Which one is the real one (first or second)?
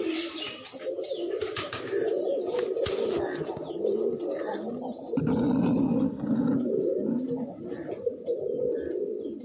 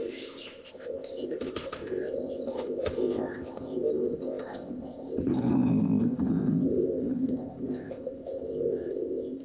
first